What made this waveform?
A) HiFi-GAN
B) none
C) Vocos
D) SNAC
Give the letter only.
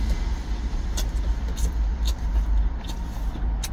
B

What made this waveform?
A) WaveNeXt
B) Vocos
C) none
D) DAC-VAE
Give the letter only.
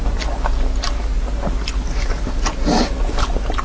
C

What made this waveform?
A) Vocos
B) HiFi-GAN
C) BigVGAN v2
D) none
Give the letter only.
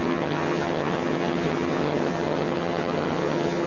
B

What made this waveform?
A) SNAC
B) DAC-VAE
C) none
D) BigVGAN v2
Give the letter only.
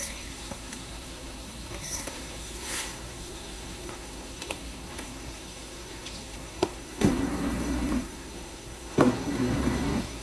A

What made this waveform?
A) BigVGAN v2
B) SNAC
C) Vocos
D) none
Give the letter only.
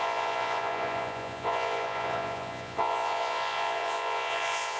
C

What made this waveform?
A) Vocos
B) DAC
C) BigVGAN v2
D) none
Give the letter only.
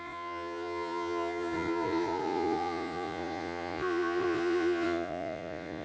A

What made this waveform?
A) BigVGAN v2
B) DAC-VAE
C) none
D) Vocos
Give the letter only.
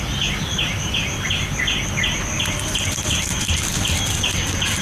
C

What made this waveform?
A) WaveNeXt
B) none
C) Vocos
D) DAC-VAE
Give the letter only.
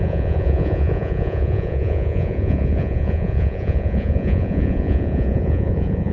C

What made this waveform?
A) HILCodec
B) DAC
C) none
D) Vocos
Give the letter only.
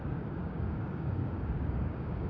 B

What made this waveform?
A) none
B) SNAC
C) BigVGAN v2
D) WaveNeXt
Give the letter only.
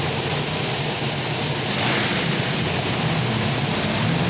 A